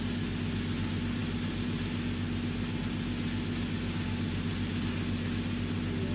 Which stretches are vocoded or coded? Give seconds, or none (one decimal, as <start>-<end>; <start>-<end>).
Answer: none